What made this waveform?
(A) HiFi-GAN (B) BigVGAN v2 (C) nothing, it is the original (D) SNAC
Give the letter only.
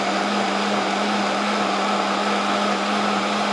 C